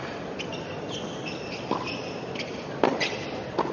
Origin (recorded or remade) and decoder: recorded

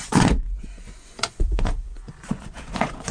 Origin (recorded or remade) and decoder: remade, vocoder, Vocos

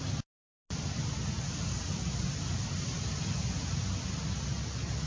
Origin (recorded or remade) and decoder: recorded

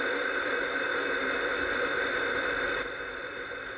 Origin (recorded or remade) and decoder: remade, vocoder, BigVGAN v2